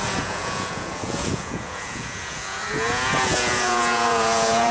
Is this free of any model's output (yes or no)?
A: no